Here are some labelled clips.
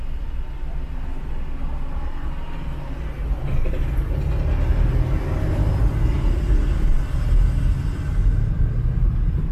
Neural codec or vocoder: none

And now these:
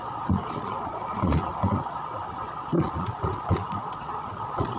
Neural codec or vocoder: vocoder, Vocos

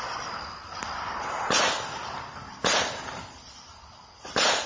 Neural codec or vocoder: none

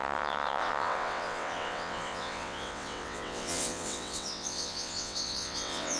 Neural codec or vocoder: vocoder, WaveNeXt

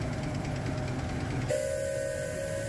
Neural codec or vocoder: none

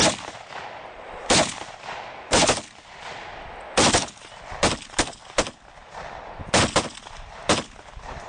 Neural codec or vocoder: none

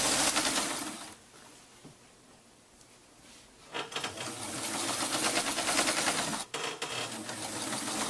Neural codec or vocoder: none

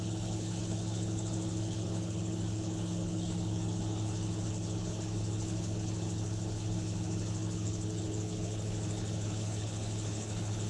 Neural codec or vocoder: codec, HILCodec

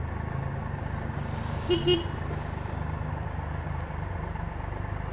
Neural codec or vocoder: none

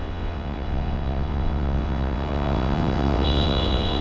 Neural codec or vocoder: vocoder, WaveNeXt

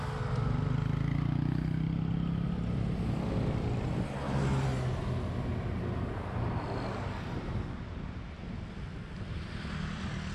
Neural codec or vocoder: none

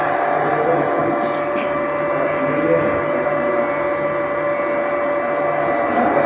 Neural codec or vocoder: none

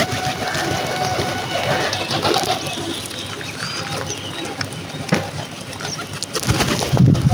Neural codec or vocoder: none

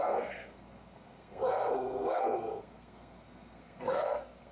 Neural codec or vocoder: codec, SNAC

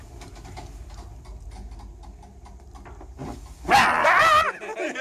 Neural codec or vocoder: none